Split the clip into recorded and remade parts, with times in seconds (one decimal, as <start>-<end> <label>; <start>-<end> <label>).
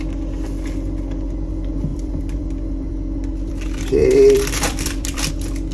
0.0-1.9 recorded; 1.9-5.3 remade; 5.3-5.7 recorded